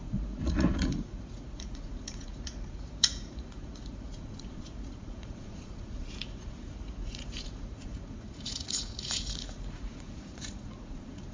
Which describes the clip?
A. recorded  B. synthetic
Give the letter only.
B